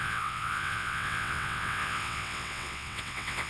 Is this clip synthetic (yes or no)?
yes